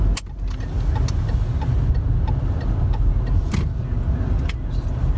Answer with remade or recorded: recorded